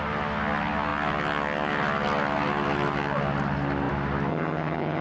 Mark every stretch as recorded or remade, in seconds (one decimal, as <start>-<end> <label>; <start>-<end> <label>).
0.0-4.3 recorded; 4.3-5.0 remade